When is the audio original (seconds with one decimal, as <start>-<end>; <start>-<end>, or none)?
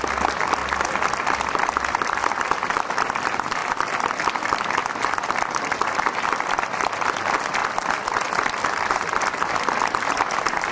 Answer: 0.6-1.7; 3.6-4.2; 7.6-8.3